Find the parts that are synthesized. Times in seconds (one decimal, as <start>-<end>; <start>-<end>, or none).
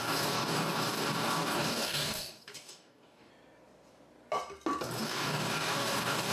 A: 0.0-3.3; 5.0-6.3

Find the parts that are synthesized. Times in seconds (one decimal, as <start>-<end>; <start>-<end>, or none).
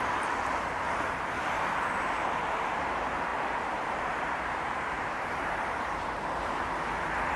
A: 0.0-7.4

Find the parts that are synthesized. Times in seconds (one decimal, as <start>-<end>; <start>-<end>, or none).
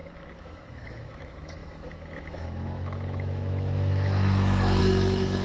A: 0.0-5.4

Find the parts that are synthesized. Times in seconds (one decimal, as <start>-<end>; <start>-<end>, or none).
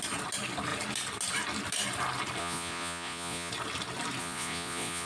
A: 2.4-3.5; 4.2-5.1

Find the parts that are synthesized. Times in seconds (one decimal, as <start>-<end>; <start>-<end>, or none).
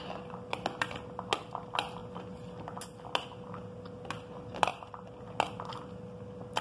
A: none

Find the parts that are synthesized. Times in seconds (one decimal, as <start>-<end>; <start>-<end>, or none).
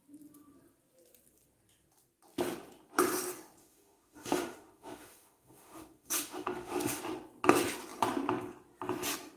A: 3.6-7.0